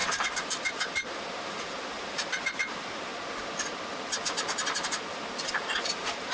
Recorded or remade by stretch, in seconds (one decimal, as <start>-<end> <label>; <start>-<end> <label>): 0.0-3.1 remade; 3.1-5.5 recorded; 5.5-6.3 remade